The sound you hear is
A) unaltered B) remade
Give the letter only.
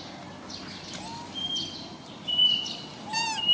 A